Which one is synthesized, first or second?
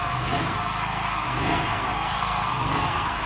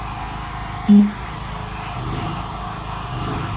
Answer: first